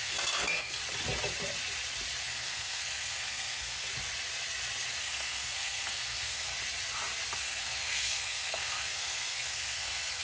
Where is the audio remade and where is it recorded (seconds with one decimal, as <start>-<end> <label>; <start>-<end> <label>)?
0.0-0.8 remade; 0.8-2.2 recorded; 2.2-3.9 remade; 3.9-5.0 recorded; 5.0-6.5 remade; 6.5-7.4 recorded; 7.4-10.2 remade